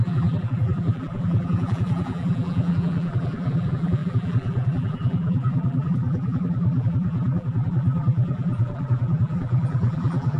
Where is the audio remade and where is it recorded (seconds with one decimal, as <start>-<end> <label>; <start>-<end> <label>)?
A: 0.0-10.4 remade